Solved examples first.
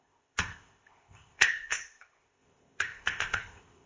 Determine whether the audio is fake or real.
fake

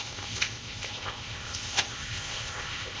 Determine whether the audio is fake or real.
fake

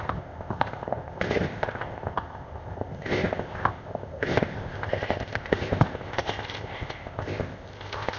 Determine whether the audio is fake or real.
fake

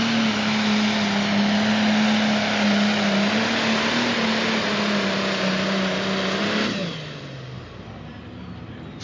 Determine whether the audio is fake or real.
real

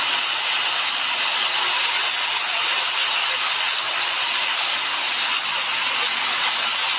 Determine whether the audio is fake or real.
real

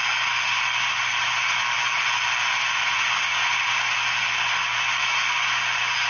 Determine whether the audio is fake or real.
real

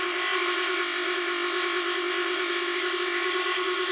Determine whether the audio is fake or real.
fake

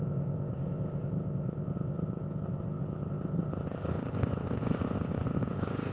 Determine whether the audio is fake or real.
fake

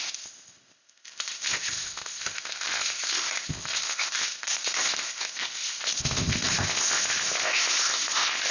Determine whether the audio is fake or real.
fake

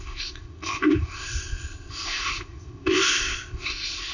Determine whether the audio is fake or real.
fake